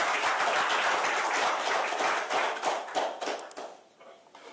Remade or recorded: recorded